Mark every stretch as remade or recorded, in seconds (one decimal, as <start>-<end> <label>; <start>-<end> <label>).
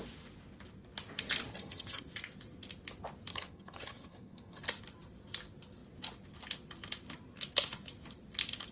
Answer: 0.0-1.5 recorded; 1.5-2.0 remade; 2.0-3.3 recorded; 3.3-4.6 remade; 4.6-8.7 recorded